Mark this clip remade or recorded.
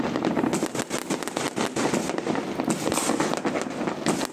recorded